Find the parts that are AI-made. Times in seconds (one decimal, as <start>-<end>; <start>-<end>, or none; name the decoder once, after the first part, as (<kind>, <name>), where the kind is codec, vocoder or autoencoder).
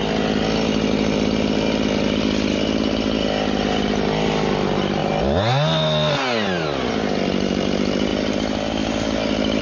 none